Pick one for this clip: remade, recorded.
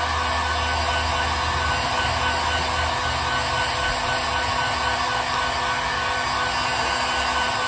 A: recorded